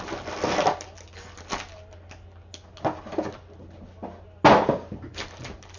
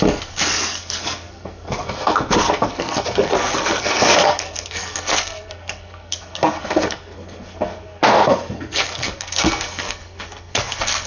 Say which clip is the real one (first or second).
first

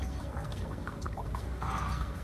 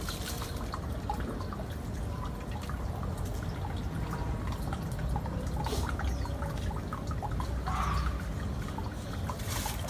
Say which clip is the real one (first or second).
second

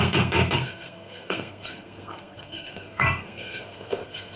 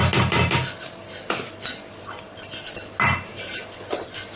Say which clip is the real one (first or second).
second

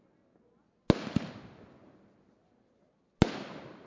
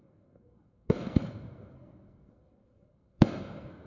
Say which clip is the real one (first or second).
first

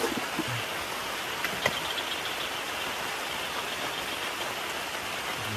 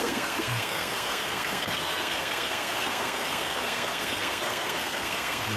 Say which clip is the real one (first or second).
first